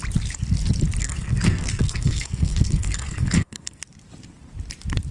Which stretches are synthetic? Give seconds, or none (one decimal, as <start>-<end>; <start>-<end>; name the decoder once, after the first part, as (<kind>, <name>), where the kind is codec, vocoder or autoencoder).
1.0-3.8 (codec, SNAC)